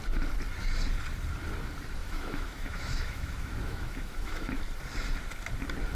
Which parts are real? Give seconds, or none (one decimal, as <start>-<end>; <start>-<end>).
0.0-2.0; 4.6-6.0